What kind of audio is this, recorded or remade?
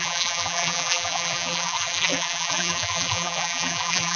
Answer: remade